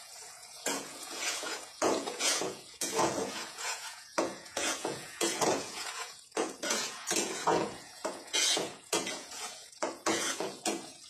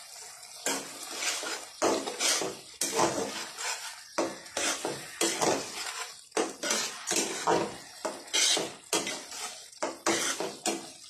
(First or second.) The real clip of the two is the second